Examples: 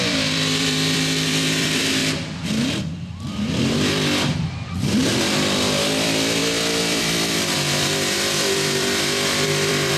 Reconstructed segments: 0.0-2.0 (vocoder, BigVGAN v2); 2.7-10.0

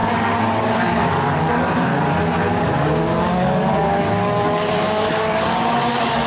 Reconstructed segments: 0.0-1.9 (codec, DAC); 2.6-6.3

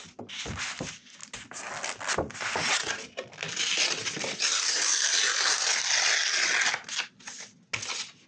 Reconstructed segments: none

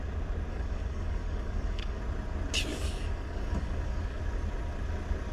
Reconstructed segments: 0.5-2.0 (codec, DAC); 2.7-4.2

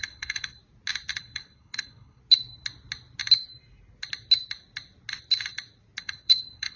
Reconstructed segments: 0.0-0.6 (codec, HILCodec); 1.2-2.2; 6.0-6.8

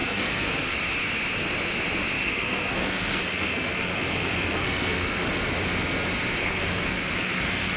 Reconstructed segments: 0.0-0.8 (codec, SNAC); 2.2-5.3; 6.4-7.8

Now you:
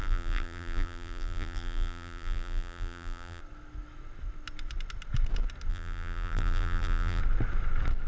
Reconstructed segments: 0.0-3.4 (vocoder, BigVGAN v2); 5.7-7.2

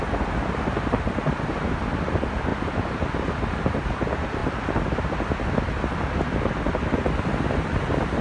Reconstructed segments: none